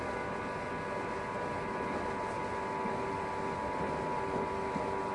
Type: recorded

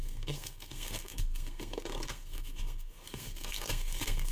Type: remade